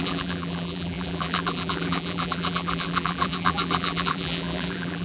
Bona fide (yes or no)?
no